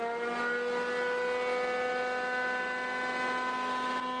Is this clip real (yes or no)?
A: yes